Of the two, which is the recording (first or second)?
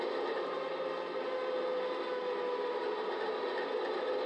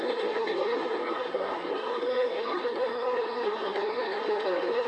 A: first